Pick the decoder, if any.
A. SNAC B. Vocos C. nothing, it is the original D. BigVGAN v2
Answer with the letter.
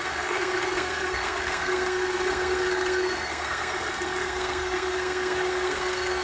A